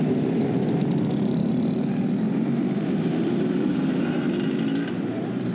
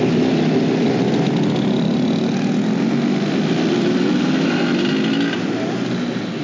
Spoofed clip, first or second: first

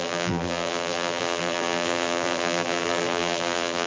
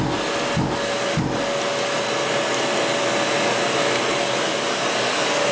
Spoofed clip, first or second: first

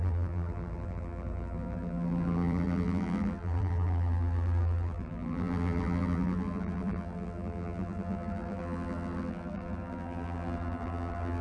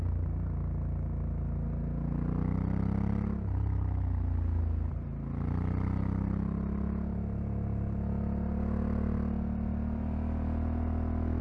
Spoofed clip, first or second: first